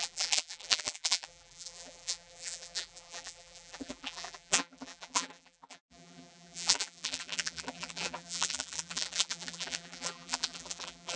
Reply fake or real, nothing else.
fake